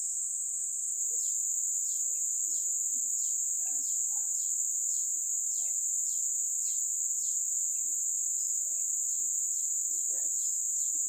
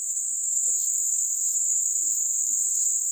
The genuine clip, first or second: first